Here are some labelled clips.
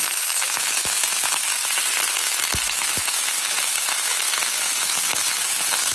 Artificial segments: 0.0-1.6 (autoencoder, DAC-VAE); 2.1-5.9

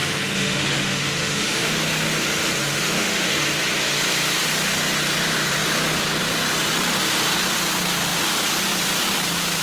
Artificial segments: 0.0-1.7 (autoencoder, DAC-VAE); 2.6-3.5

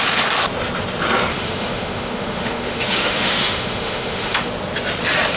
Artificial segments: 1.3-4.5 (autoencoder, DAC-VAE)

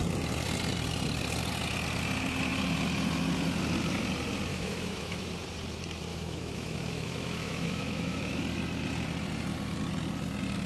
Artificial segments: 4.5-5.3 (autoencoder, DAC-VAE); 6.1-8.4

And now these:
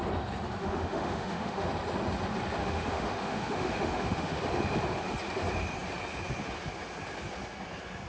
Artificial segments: 0.6-1.7 (autoencoder, DAC-VAE); 2.6-4.4